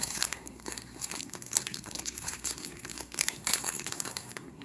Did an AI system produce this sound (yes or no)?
yes